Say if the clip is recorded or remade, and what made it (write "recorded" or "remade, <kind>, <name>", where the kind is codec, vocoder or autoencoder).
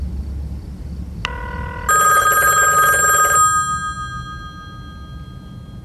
recorded